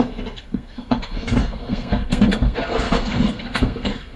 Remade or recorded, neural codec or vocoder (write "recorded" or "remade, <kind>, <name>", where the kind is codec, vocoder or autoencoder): remade, codec, SNAC